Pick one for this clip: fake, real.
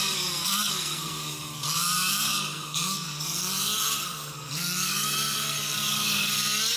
fake